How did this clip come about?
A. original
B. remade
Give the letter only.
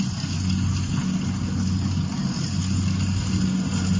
A